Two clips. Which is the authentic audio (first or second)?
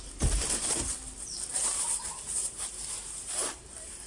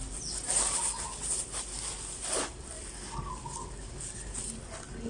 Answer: second